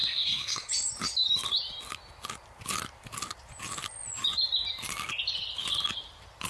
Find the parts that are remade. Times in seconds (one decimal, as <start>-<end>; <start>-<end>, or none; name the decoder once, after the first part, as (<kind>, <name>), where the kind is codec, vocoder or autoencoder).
0.0-0.7 (codec, SNAC)